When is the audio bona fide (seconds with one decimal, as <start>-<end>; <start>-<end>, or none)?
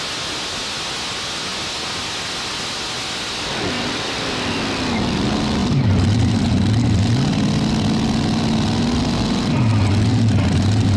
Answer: 0.0-5.6; 6.3-11.0